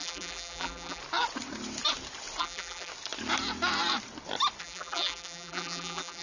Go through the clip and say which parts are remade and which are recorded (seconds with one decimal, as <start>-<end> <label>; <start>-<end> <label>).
0.0-1.0 remade; 1.0-2.4 recorded; 2.4-2.9 remade; 2.9-4.6 recorded; 4.6-6.2 remade